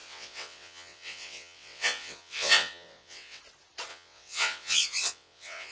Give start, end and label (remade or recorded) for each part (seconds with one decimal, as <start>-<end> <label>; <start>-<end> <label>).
0.0-3.4 remade; 3.4-3.9 recorded; 3.9-5.7 remade